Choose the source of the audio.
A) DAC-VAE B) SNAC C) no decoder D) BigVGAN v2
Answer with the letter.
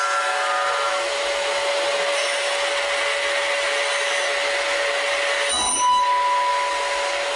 C